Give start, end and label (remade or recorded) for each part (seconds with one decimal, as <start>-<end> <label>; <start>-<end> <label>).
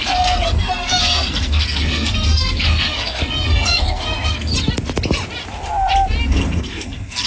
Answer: 0.0-4.5 remade; 4.5-6.2 recorded; 6.2-7.3 remade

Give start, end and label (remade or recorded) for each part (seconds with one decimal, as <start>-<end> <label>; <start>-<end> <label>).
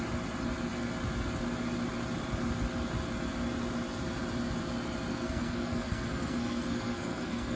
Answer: 0.0-5.1 recorded; 5.1-7.6 remade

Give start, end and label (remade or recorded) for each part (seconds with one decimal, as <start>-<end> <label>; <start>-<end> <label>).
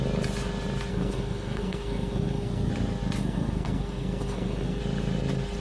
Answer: 0.0-0.9 recorded; 0.9-2.7 remade; 2.7-3.2 recorded; 3.2-4.8 remade; 4.8-5.6 recorded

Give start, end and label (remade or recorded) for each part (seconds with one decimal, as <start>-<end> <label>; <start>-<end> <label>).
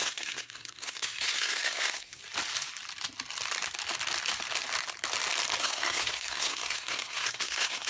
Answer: 0.0-2.2 remade; 2.2-5.6 recorded; 5.6-7.9 remade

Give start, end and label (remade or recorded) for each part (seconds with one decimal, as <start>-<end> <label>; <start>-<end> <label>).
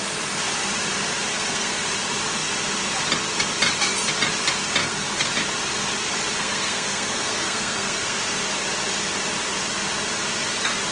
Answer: 0.0-1.3 recorded; 1.3-1.8 remade; 1.8-4.8 recorded; 4.8-5.3 remade; 5.3-6.4 recorded; 6.4-8.2 remade; 8.2-10.9 recorded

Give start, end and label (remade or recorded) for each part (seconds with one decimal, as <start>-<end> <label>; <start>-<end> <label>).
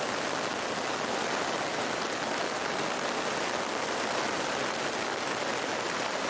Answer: 0.0-6.3 recorded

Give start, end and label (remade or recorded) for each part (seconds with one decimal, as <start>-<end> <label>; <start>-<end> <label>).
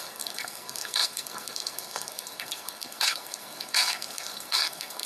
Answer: 0.0-5.1 remade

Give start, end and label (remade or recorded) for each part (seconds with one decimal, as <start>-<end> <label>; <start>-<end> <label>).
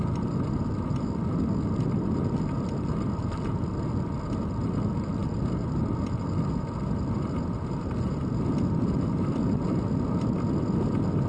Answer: 0.0-11.3 recorded